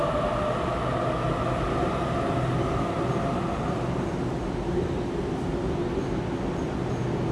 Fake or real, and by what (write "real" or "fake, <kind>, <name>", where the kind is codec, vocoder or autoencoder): real